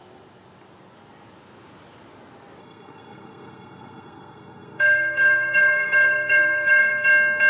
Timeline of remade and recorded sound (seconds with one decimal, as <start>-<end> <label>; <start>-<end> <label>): 0.0-2.6 recorded; 2.6-7.1 remade; 7.1-7.5 recorded